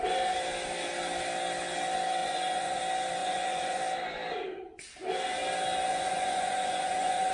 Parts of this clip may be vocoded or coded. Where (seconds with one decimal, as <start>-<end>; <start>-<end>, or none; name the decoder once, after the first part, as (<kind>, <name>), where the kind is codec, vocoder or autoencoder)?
2.2-2.8 (vocoder, Vocos); 3.2-3.8; 5.9-7.3